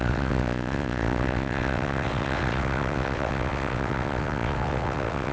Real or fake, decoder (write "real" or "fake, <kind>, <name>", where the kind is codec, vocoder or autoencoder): fake, vocoder, WaveNeXt